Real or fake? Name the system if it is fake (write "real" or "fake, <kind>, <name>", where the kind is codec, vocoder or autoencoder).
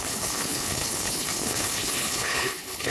fake, codec, HILCodec